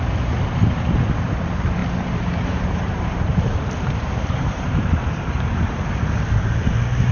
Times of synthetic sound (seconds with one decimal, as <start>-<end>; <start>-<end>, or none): 1.8-5.9

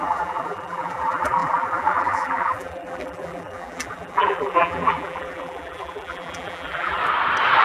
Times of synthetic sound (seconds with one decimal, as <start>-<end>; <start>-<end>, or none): 0.0-7.0

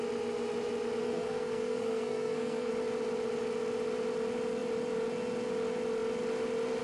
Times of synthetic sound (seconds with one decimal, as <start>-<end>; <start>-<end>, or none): 1.0-2.7